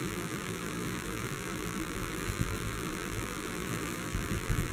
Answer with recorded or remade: remade